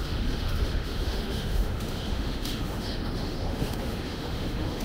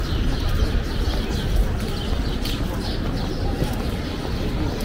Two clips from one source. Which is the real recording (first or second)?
second